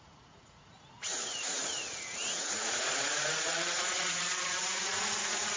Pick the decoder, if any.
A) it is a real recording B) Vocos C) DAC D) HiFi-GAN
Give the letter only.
B